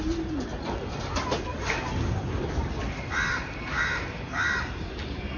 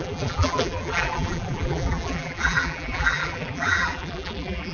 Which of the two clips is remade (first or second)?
second